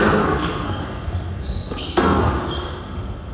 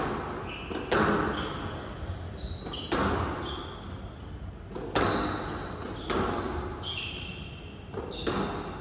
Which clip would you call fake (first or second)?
first